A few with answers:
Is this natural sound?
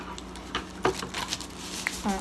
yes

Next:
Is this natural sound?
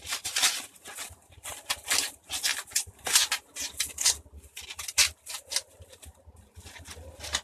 yes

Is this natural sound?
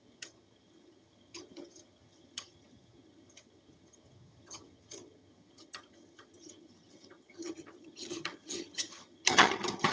no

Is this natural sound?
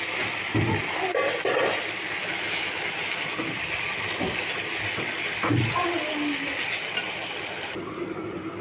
yes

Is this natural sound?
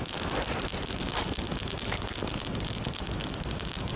yes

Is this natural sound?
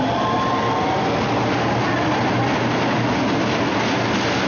yes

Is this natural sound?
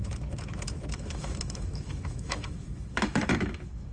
no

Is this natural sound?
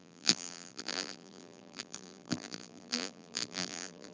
no